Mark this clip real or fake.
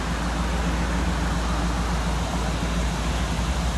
real